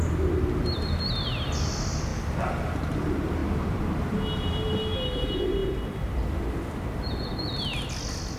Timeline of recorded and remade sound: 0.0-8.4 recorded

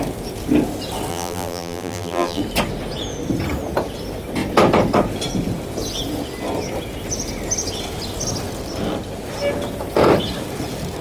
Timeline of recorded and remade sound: 0.0-1.1 recorded; 1.1-2.4 remade; 2.4-11.0 recorded

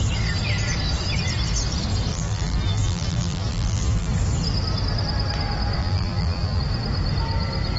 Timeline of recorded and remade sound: 0.0-2.1 recorded; 2.1-4.1 remade; 4.1-5.8 recorded; 5.8-6.6 remade; 6.6-7.8 recorded

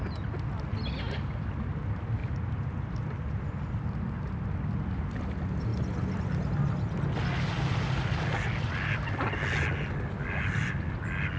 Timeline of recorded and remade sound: 0.0-2.2 recorded; 2.2-3.8 remade; 3.8-11.4 recorded

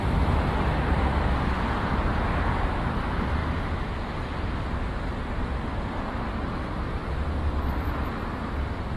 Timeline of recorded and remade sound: 0.0-7.0 remade; 7.0-7.8 recorded; 7.8-9.0 remade

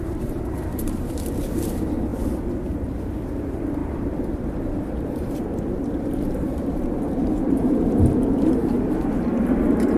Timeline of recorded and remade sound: 0.0-2.1 remade; 2.1-2.6 recorded; 2.6-10.0 remade

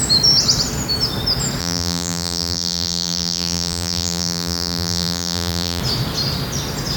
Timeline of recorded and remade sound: 0.0-1.6 recorded; 1.6-5.8 remade; 5.8-7.0 recorded

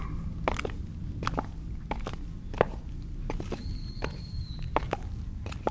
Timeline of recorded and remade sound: 0.0-3.6 recorded; 3.6-4.5 remade; 4.5-5.7 recorded